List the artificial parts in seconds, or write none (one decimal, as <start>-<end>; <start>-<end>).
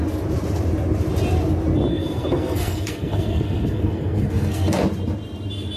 1.9-4.8